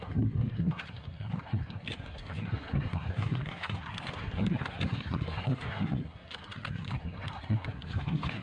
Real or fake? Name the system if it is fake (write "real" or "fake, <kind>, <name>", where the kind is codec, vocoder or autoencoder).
fake, codec, SNAC